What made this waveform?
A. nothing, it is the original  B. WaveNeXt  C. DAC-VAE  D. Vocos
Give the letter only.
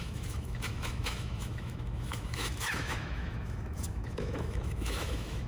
C